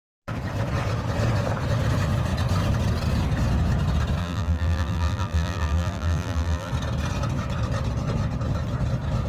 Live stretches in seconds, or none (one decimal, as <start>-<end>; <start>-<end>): 0.0-4.2; 6.7-9.3